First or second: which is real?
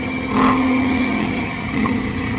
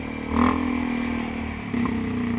second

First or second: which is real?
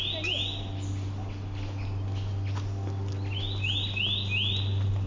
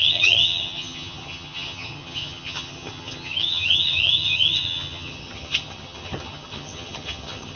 first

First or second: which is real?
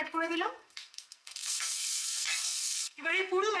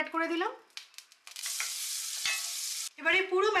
second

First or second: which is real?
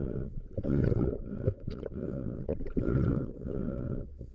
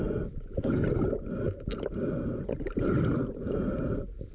second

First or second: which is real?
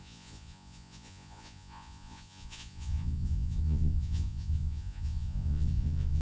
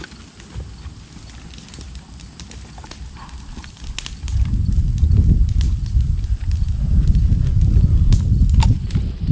second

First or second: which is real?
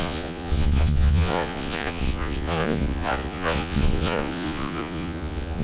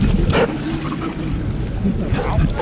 second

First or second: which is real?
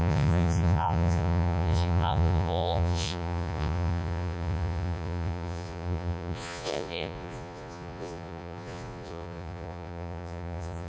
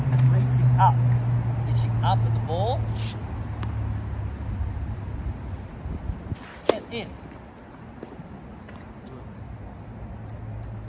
second